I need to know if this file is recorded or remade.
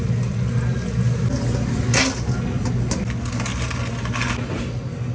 recorded